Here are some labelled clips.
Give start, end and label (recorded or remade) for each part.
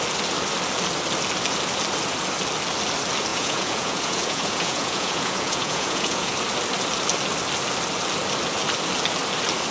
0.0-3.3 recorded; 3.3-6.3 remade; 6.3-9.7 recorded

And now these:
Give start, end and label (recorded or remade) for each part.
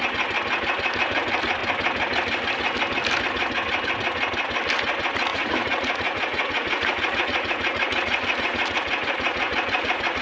0.0-5.3 recorded; 5.3-10.2 remade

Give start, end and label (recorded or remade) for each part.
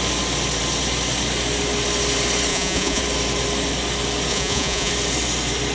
0.0-2.5 recorded; 2.5-3.0 remade; 3.0-4.3 recorded; 4.3-4.9 remade; 4.9-5.7 recorded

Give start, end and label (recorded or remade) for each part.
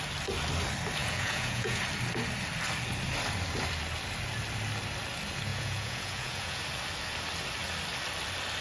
0.0-1.0 recorded; 1.0-1.8 remade; 1.8-5.5 recorded; 5.5-6.6 remade; 6.6-8.6 recorded